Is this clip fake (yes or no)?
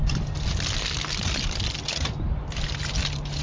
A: no